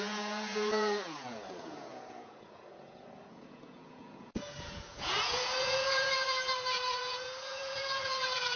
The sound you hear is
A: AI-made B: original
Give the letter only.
A